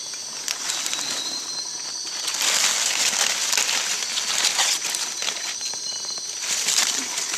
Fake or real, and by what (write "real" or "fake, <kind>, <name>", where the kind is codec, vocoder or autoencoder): real